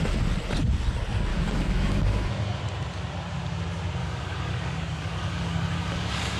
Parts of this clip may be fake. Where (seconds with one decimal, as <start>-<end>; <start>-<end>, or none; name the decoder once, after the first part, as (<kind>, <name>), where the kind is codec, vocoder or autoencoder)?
1.3-2.6 (codec, DAC); 4.0-6.4